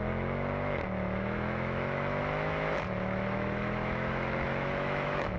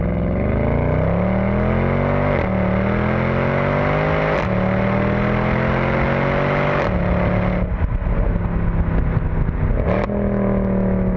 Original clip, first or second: second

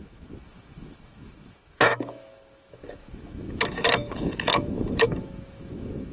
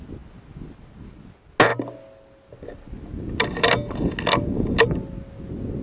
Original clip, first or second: second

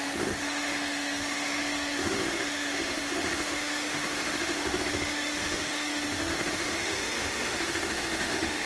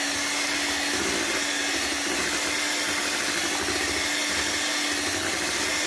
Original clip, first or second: second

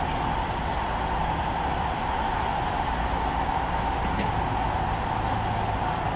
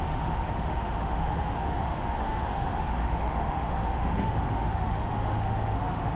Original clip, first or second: first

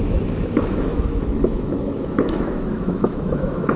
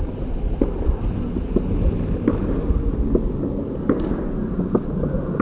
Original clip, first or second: second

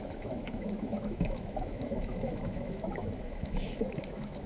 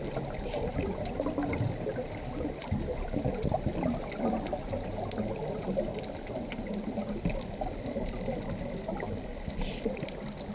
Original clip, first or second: second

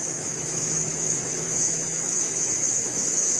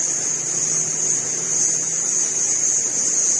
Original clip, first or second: second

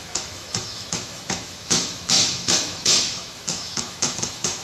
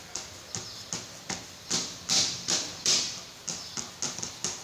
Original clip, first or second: second